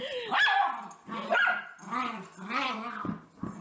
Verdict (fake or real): real